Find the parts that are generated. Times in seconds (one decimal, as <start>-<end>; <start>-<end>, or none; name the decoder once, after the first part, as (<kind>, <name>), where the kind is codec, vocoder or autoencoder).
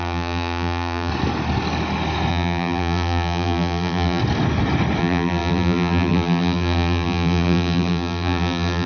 0.0-1.1 (vocoder, BigVGAN v2); 2.3-4.2; 5.0-8.9